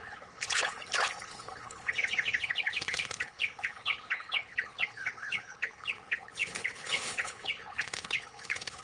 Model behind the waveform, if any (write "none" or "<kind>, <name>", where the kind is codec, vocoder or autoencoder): codec, HILCodec